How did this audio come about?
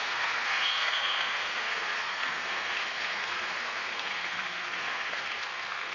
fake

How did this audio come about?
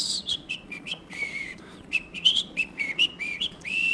fake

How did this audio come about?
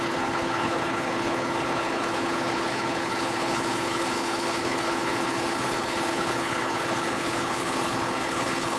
fake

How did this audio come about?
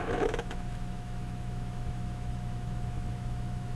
fake